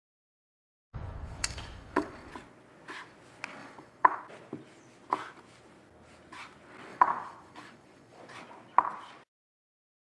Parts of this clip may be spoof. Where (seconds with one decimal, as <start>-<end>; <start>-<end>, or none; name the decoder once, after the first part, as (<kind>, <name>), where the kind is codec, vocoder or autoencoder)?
0.8-2.3 (vocoder, Vocos); 3.6-4.2; 6.9-8.2